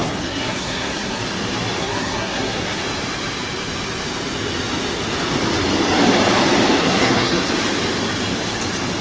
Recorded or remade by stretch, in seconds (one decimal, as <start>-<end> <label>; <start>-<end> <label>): 0.0-1.2 remade; 1.2-1.8 recorded; 1.8-2.8 remade; 2.8-6.8 recorded; 6.8-7.5 remade; 7.5-9.0 recorded